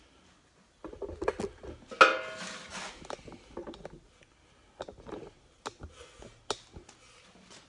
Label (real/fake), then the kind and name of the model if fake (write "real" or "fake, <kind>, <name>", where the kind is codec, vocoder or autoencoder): real